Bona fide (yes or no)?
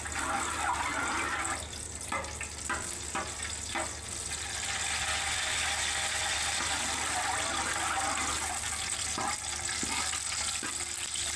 yes